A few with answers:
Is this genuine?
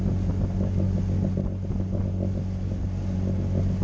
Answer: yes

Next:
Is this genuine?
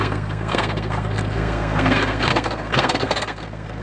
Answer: no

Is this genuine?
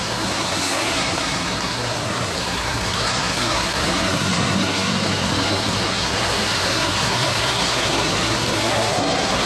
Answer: no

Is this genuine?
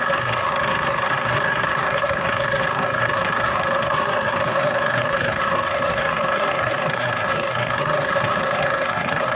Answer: no